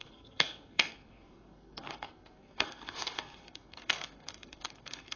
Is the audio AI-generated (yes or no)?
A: yes